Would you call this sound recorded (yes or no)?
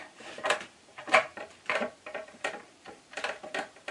no